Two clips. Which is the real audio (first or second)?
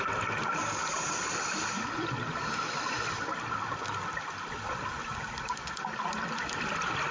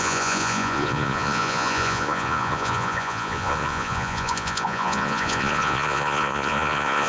first